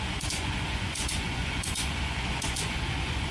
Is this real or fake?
fake